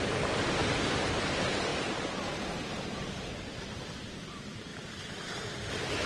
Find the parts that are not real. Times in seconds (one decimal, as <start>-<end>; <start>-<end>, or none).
0.0-0.6; 1.2-4.7